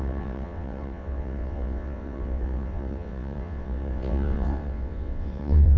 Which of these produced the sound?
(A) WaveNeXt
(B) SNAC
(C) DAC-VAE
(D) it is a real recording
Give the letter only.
A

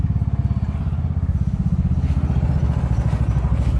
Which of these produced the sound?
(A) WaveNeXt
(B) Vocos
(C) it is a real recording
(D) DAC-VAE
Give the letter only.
C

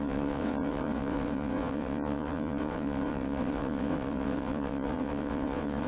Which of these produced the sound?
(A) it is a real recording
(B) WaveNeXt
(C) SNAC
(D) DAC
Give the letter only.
B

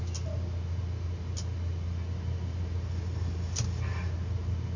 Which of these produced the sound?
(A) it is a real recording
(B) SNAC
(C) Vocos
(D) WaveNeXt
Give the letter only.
A